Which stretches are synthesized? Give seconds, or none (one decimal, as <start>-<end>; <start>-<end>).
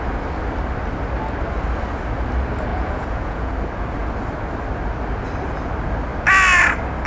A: 2.7-3.5